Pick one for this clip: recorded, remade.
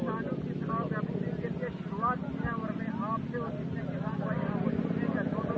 recorded